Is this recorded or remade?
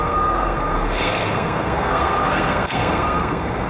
remade